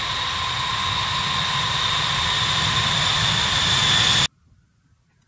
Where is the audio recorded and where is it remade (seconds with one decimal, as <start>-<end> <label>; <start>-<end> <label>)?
0.0-5.3 recorded